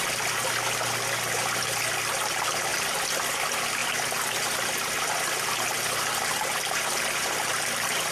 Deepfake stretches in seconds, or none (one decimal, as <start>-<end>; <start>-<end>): none